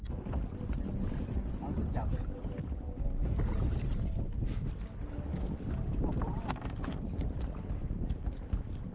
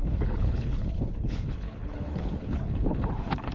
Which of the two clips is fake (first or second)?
second